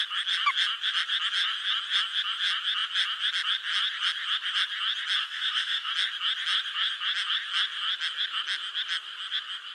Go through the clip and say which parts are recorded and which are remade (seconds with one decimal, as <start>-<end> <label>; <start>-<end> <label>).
0.0-5.2 recorded; 5.2-5.9 remade; 5.9-9.7 recorded